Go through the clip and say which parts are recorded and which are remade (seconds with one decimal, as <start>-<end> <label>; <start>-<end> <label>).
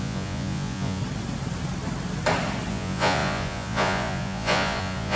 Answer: 0.0-1.0 remade; 1.0-2.7 recorded; 2.7-5.2 remade